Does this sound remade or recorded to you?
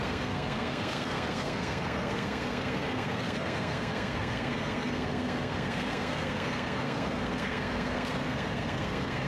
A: remade